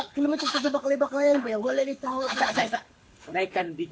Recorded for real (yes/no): no